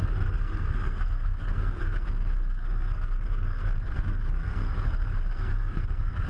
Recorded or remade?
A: remade